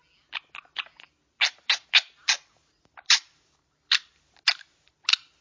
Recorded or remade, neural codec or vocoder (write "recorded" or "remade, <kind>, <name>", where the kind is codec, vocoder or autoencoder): recorded